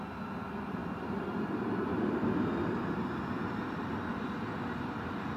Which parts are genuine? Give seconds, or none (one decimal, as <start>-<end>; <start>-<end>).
none